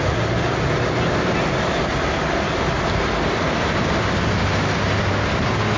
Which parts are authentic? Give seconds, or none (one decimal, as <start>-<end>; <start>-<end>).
0.0-5.8